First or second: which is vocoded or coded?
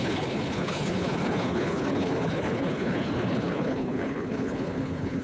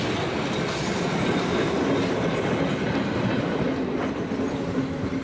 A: first